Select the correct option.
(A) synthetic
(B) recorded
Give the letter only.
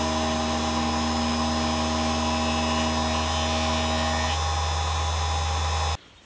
B